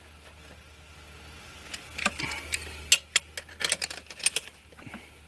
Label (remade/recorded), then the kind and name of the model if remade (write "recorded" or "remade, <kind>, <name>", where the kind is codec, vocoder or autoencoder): recorded